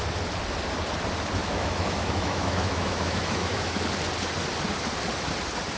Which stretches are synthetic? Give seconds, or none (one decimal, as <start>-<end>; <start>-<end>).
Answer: 1.4-3.8